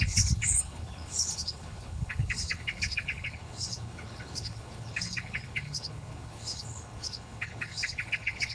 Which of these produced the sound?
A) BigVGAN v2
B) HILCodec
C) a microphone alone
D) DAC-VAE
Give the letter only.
B